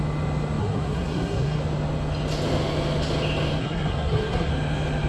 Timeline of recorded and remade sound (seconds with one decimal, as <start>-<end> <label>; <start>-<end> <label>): 0.0-0.6 recorded; 0.6-1.6 remade; 1.6-3.6 recorded; 3.6-4.5 remade; 4.5-5.1 recorded